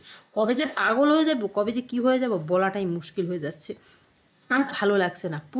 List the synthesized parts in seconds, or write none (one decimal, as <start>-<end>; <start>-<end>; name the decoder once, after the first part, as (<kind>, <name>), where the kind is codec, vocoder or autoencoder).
0.0-0.9 (codec, DAC); 4.3-4.7